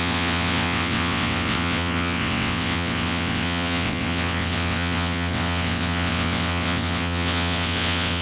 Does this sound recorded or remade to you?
remade